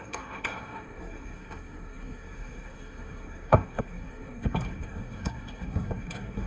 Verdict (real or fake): fake